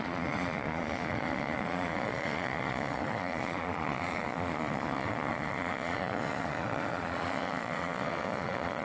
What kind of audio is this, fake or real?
fake